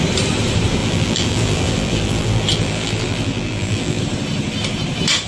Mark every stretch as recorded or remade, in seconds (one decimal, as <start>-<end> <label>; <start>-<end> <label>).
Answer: 0.0-0.8 recorded; 0.8-4.0 remade; 4.0-5.3 recorded